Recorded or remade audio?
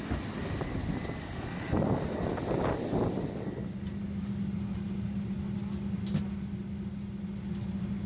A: recorded